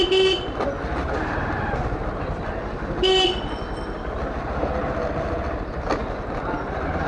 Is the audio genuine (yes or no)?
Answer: yes